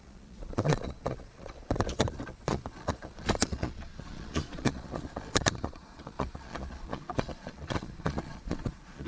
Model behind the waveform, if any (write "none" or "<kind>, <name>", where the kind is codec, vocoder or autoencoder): vocoder, Vocos